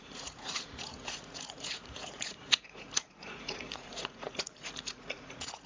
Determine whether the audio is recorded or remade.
remade